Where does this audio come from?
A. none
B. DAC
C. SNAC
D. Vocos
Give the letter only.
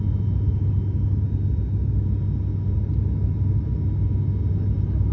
A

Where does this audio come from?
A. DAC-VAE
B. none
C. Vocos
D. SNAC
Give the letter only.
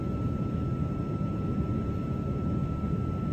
B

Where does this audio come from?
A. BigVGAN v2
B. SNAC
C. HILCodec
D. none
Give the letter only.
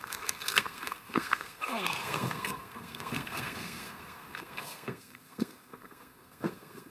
B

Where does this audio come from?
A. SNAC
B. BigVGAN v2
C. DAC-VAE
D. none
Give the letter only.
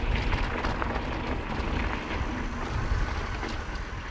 D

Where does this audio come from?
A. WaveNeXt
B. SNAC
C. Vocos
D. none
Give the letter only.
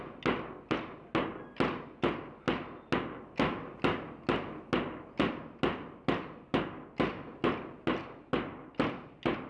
D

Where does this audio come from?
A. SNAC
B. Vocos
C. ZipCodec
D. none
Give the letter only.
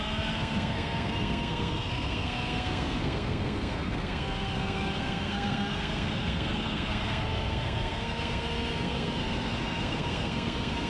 A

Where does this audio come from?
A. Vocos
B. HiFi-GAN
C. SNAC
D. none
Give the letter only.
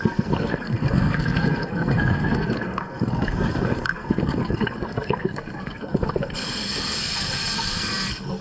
C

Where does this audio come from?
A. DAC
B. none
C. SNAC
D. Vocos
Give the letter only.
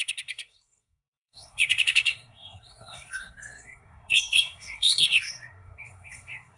C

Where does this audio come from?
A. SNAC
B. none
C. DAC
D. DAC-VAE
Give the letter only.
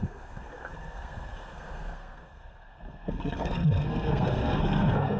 A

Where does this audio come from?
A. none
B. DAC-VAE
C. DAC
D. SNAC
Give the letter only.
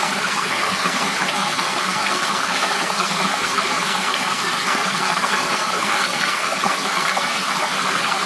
D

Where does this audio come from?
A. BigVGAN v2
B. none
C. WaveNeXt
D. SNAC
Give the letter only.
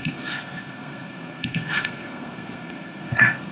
D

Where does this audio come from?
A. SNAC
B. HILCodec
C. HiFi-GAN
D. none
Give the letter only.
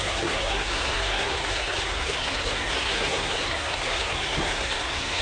A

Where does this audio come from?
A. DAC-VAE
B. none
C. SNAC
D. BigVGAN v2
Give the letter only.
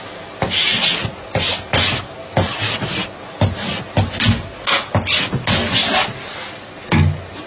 B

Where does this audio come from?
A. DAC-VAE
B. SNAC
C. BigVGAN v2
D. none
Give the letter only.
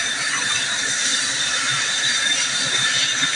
D